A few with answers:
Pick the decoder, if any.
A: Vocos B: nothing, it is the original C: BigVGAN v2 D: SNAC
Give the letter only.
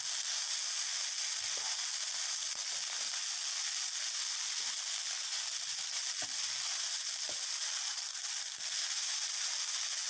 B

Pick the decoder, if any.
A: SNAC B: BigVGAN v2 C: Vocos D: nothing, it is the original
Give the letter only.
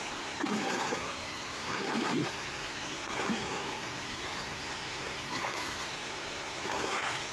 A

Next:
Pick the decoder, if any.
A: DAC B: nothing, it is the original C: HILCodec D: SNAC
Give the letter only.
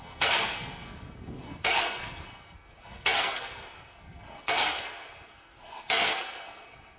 D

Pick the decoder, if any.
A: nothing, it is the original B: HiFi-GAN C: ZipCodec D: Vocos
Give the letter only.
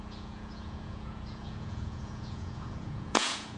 D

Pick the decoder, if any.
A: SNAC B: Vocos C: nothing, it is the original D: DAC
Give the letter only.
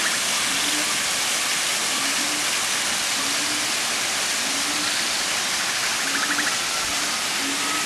C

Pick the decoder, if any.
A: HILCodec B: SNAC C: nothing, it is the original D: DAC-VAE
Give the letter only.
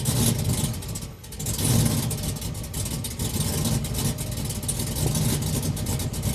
C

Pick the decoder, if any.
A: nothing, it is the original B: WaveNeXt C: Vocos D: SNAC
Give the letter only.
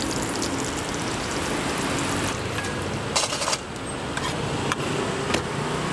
A